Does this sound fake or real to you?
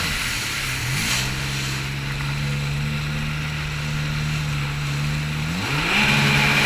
real